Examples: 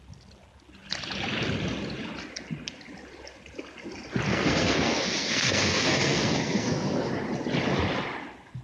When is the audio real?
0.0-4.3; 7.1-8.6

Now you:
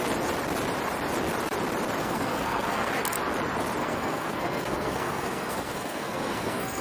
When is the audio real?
0.0-2.0; 2.9-3.8

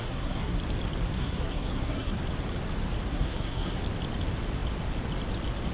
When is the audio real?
0.6-1.2; 2.2-3.1; 3.8-5.7

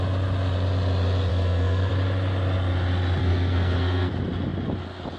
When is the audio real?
0.0-1.3; 1.9-3.2; 4.1-5.2

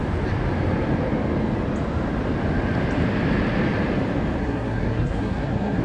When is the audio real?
0.0-4.4

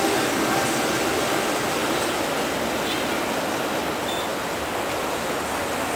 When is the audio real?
0.0-6.0

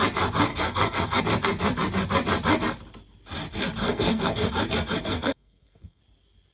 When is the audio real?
0.0-0.5; 1.2-3.8; 4.5-5.0; 6.0-6.5